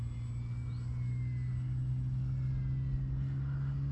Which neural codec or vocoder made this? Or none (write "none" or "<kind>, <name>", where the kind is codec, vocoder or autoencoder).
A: none